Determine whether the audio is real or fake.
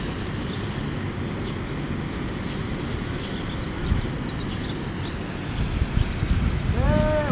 real